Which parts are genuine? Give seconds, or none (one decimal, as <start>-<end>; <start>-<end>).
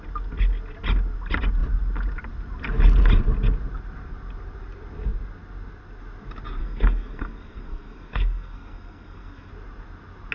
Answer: 0.0-6.6; 9.5-10.3